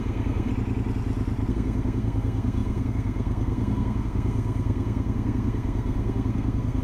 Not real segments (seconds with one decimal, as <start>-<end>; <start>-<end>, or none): 0.0-0.5; 1.5-6.8